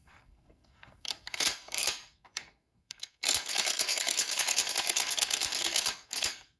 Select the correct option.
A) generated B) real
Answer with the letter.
A